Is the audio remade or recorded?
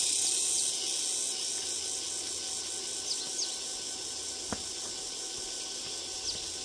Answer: recorded